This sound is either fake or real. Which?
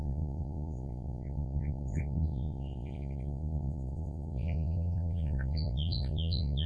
fake